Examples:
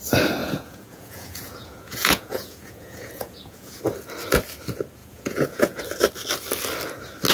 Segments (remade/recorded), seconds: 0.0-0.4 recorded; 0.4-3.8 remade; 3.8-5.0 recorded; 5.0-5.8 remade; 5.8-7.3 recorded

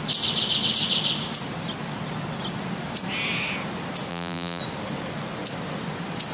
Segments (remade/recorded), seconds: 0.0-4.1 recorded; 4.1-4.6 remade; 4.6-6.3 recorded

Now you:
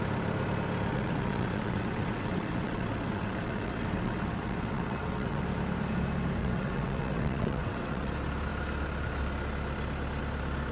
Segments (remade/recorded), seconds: 0.0-0.9 recorded; 0.9-5.4 remade; 5.4-6.4 recorded; 6.4-8.1 remade; 8.1-10.7 recorded